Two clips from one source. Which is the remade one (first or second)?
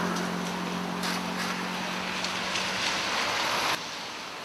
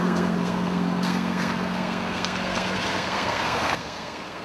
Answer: second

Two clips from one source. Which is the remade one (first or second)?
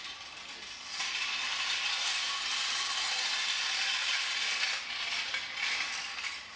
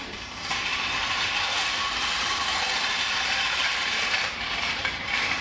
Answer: second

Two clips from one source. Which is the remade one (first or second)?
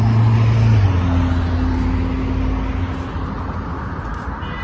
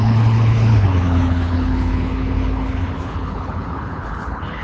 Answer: second